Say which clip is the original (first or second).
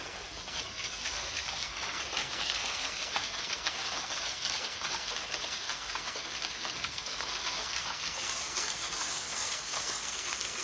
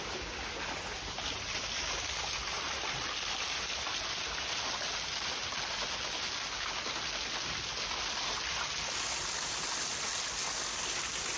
second